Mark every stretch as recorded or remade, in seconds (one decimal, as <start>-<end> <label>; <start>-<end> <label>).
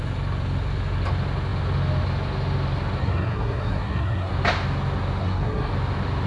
0.0-3.0 recorded; 3.0-4.3 remade; 4.3-5.2 recorded; 5.2-5.7 remade; 5.7-6.3 recorded